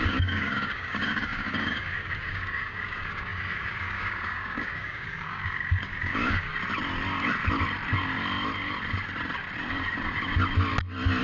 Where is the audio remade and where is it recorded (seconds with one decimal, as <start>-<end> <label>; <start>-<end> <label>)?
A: 0.0-6.5 remade; 6.5-11.2 recorded